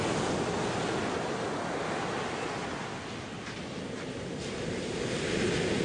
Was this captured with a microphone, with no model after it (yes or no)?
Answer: yes